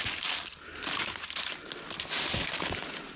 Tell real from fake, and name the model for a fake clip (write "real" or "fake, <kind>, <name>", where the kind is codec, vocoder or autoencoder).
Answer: real